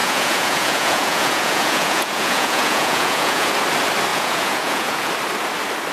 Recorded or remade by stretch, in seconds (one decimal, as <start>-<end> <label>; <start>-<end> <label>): 0.0-3.5 remade; 3.5-4.1 recorded; 4.1-5.1 remade; 5.1-5.9 recorded